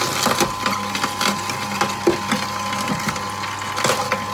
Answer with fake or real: real